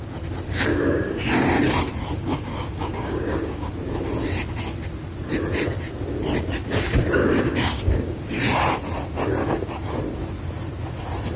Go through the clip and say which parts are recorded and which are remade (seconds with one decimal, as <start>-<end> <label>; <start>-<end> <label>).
0.0-0.7 recorded; 0.7-1.3 remade; 1.3-2.2 recorded; 2.2-3.7 remade; 3.7-7.2 recorded; 7.2-8.4 remade; 8.4-9.4 recorded; 9.4-10.0 remade; 10.0-11.4 recorded

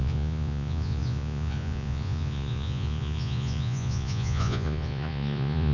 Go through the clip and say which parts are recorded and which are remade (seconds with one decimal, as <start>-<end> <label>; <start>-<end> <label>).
0.0-5.7 remade

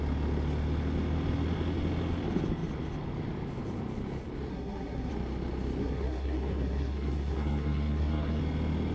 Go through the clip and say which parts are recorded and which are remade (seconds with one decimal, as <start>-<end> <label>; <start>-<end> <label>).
0.0-4.5 recorded; 4.5-5.1 remade; 5.1-5.8 recorded; 5.8-8.4 remade; 8.4-8.9 recorded

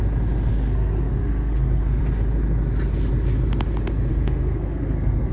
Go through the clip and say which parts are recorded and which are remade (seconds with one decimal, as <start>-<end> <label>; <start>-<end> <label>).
0.0-0.5 recorded; 0.5-2.0 remade; 2.0-4.1 recorded; 4.1-5.3 remade

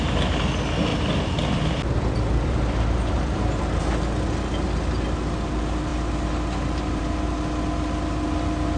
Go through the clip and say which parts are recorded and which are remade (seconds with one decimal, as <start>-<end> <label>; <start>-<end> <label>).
0.0-0.9 recorded; 0.9-3.8 remade; 3.8-8.8 recorded

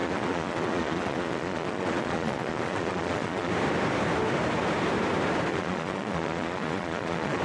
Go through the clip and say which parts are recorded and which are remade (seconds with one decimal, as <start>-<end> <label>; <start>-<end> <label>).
0.0-3.5 remade; 3.5-5.5 recorded; 5.5-7.4 remade

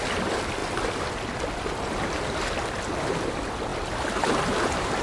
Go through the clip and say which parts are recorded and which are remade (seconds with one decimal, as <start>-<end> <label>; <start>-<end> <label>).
0.0-5.0 recorded

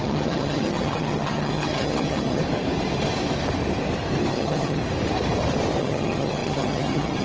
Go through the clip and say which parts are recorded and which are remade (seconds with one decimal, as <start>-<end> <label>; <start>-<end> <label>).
0.0-2.4 remade; 2.4-4.3 recorded; 4.3-4.8 remade; 4.8-5.8 recorded; 5.8-7.2 remade